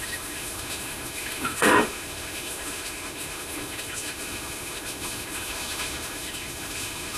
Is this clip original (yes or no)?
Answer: no